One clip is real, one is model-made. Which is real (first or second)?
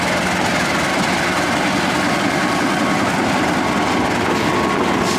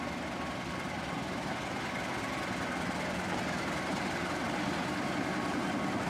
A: first